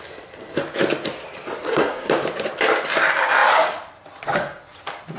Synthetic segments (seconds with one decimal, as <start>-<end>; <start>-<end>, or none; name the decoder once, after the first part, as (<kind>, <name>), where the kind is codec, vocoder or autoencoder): 1.5-2.1 (codec, SNAC)